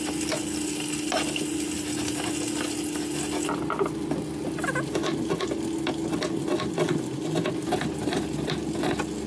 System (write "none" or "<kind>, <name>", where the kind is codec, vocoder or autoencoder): none